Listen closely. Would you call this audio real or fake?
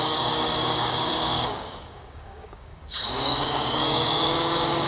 fake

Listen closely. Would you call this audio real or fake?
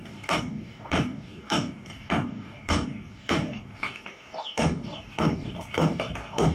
fake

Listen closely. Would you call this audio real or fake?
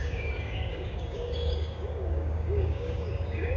fake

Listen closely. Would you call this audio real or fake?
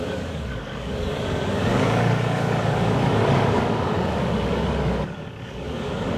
fake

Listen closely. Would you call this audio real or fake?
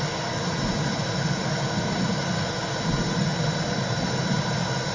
real